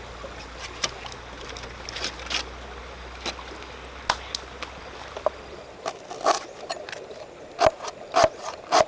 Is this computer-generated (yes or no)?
no